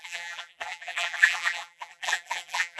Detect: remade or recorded remade